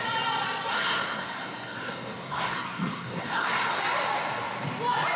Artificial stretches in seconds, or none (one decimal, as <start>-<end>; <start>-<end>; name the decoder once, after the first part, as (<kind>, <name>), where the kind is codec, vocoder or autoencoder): 0.7-3.8 (codec, SNAC)